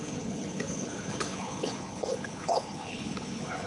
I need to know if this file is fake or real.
fake